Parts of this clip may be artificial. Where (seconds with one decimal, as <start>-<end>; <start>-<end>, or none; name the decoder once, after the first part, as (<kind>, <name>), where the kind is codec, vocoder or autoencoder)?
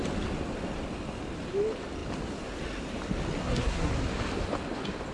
3.4-3.9 (codec, SNAC)